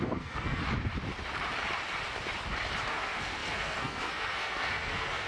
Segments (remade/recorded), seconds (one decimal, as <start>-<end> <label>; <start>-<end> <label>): 0.0-0.6 remade; 0.6-2.9 recorded; 2.9-5.3 remade